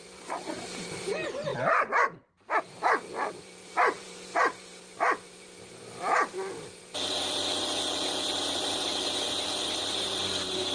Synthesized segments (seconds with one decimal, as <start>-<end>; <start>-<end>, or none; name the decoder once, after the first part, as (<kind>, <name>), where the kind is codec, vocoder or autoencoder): 0.0-10.7 (vocoder, BigVGAN v2)